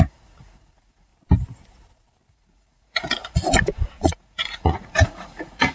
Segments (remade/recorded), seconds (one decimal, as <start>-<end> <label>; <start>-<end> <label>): 0.0-1.1 remade; 1.1-2.3 recorded; 2.3-5.7 remade